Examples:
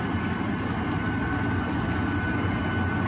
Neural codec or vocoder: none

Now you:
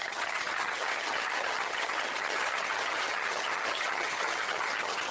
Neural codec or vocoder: vocoder, HiFi-GAN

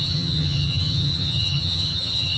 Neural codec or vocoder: vocoder, HiFi-GAN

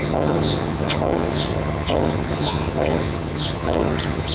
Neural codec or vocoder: vocoder, HiFi-GAN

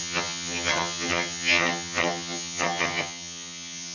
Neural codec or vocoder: vocoder, HiFi-GAN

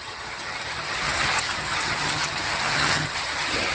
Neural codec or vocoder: vocoder, HiFi-GAN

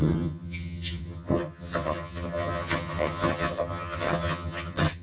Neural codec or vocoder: vocoder, HiFi-GAN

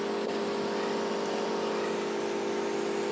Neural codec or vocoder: none